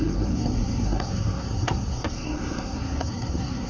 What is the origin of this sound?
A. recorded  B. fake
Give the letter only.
B